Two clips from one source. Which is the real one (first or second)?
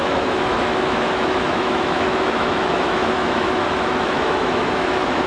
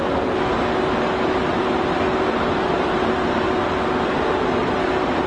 second